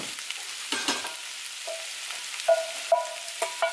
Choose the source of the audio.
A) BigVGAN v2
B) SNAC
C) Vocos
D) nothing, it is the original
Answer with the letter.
D